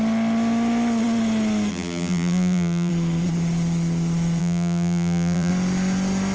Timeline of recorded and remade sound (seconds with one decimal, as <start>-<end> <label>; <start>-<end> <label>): 0.0-1.7 recorded; 1.7-2.9 remade; 2.9-4.4 recorded; 4.4-5.5 remade; 5.5-6.3 recorded